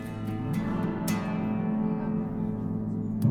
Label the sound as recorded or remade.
recorded